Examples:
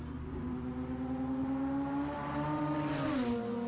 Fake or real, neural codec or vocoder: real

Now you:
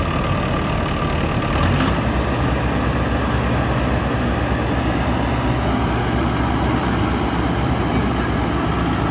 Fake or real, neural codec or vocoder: real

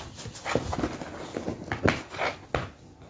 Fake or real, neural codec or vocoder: real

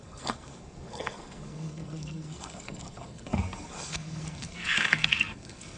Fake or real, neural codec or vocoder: fake, codec, SNAC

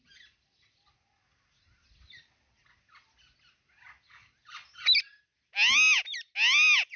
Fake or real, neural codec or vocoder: real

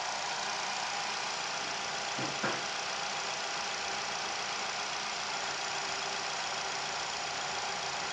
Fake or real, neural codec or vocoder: real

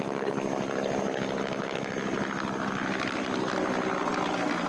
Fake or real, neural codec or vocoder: real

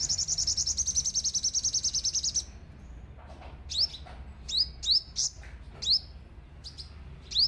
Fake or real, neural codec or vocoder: real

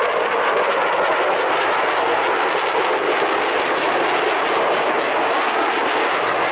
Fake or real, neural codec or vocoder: real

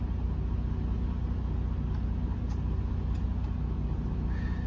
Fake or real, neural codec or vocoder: real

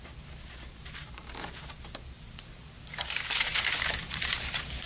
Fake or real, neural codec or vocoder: fake, vocoder, BigVGAN v2